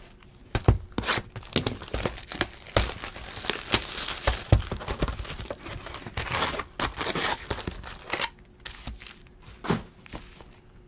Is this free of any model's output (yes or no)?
yes